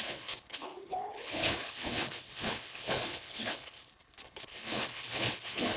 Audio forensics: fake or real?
fake